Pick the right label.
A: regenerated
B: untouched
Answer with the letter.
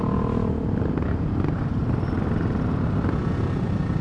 B